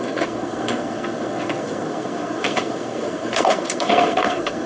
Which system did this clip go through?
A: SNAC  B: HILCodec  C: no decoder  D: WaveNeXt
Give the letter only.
A